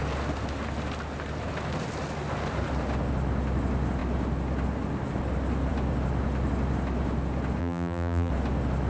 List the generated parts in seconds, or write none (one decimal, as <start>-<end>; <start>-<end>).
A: 7.6-8.3